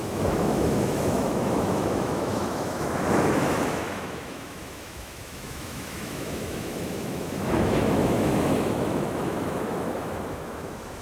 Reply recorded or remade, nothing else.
remade